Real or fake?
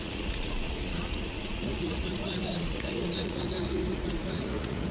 fake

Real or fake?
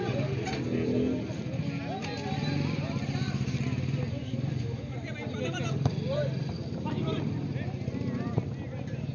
real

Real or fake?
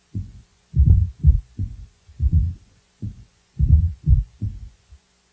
fake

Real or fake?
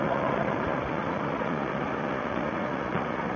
fake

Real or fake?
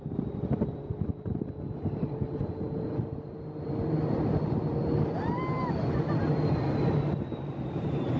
real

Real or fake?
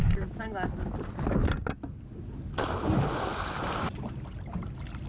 real